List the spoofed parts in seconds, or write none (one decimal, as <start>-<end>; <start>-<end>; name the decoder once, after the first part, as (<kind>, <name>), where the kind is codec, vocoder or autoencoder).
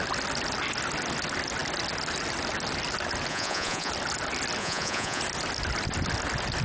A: 3.3-3.9 (vocoder, Vocos); 4.6-5.2